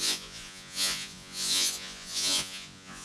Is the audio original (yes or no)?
no